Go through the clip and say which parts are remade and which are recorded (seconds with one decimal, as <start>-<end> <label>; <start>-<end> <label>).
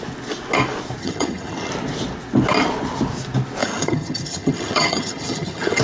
0.0-1.0 recorded; 1.0-1.7 remade; 1.7-3.6 recorded; 3.6-5.8 remade